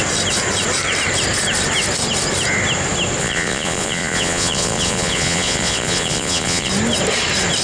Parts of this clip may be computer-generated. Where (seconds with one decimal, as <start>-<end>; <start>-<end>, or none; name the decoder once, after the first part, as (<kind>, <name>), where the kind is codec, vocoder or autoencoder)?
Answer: 3.2-6.7 (vocoder, Vocos)